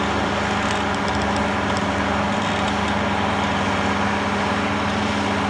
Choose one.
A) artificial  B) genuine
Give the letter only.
B